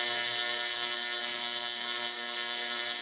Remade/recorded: remade